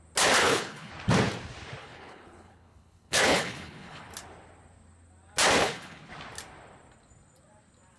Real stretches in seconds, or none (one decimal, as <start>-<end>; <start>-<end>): 0.0-0.4; 0.9-1.8; 4.1-5.6; 6.1-8.0